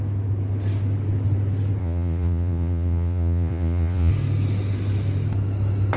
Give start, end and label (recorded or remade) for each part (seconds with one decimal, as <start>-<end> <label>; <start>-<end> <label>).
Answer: 0.0-1.8 recorded; 1.8-4.1 remade; 4.1-6.0 recorded